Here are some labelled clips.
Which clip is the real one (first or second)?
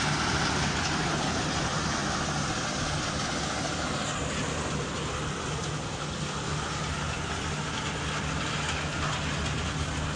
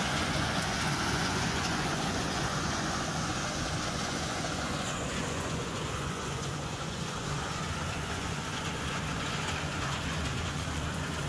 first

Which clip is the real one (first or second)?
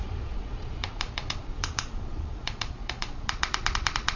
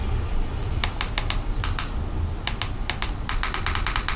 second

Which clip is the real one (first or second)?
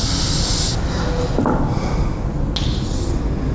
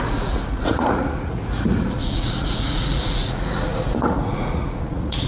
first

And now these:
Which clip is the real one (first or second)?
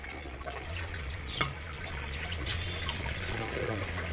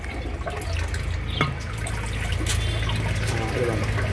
second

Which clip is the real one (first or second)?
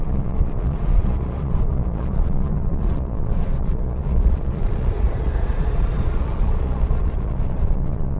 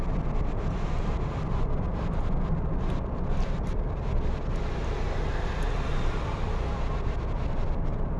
second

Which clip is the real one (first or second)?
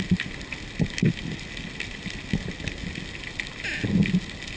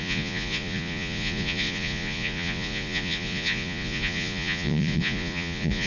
first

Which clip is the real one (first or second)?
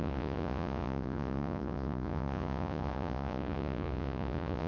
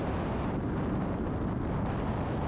second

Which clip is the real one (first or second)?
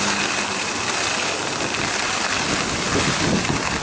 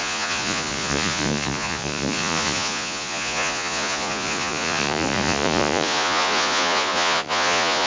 first